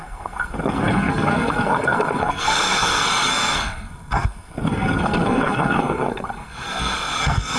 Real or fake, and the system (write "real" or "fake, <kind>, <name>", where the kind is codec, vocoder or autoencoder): fake, codec, SNAC